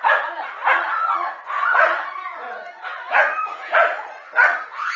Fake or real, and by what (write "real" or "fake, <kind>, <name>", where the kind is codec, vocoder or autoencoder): fake, vocoder, Vocos